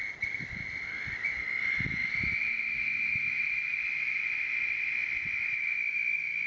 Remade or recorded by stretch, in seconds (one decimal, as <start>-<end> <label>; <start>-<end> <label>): 0.0-2.0 recorded; 2.0-3.0 remade; 3.0-6.5 recorded